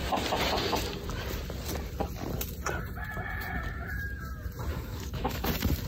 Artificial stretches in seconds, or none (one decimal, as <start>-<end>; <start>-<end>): 4.7-5.5